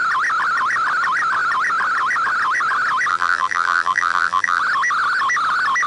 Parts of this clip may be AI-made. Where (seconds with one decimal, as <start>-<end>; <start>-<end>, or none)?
3.1-4.6